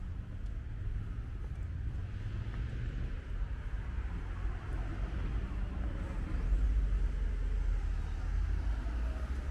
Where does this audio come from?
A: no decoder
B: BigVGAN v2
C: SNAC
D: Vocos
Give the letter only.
A